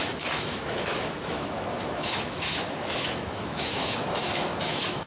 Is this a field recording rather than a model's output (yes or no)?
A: no